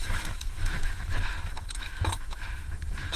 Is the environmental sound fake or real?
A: fake